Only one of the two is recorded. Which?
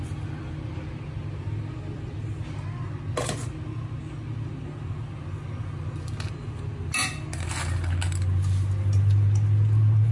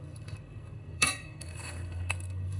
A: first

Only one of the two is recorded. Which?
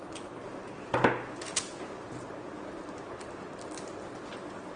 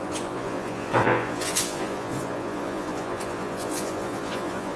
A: first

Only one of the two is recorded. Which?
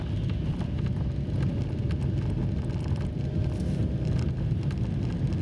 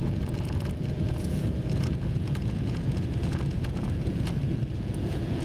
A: first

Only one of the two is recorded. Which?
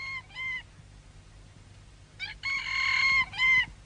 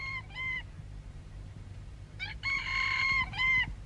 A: first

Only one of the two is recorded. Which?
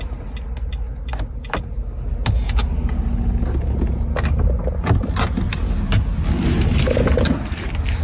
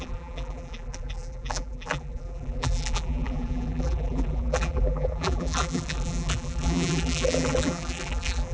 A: first